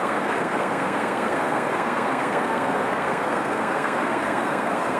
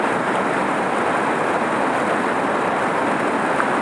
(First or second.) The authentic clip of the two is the second